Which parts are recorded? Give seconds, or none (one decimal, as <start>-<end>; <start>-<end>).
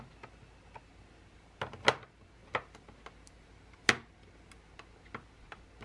0.0-5.8